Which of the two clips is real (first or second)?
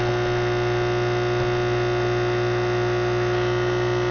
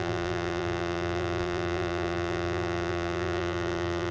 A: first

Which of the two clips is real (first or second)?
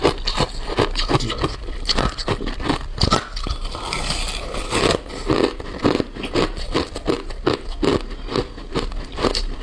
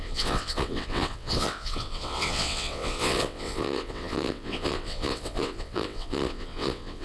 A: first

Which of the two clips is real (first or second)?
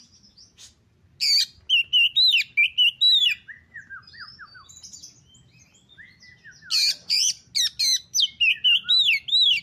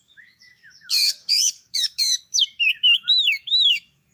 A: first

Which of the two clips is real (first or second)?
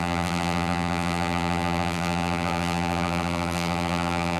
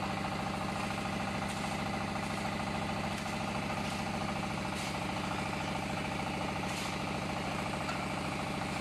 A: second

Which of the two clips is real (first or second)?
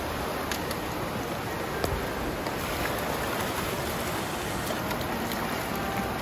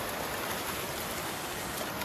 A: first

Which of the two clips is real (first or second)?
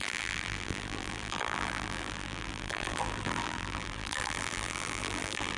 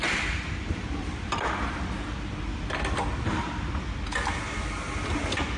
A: second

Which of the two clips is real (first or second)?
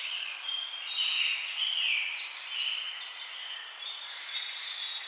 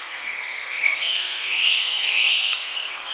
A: first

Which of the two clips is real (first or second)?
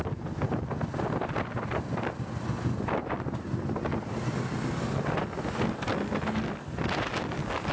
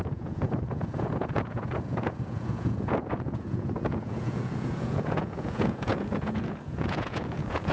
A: first